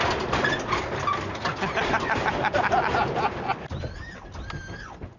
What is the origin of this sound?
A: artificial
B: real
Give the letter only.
B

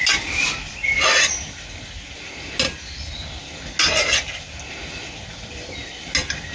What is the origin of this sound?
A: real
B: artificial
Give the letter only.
A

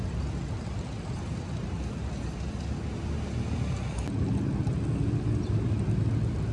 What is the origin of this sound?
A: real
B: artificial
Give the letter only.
A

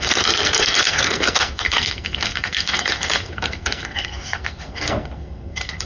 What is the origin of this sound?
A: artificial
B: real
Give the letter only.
A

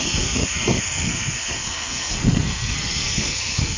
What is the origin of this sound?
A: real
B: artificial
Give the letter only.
B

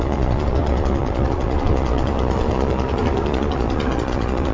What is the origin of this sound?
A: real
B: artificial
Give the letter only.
B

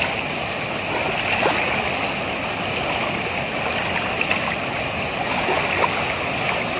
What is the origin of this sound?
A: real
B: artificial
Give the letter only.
A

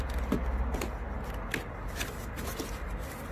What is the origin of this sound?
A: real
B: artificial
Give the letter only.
A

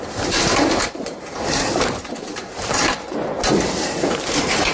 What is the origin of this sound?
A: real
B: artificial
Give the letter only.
B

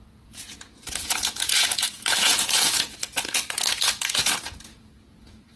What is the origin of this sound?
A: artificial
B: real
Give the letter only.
A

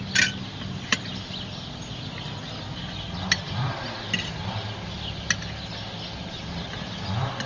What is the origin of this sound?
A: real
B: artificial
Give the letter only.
A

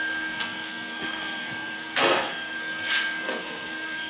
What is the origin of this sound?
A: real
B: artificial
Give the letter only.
B